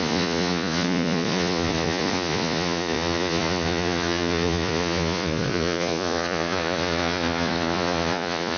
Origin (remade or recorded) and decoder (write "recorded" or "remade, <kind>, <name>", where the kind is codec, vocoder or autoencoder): remade, vocoder, Vocos